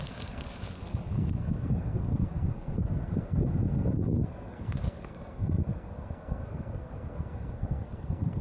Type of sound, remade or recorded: remade